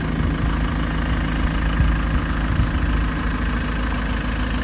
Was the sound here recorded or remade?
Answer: recorded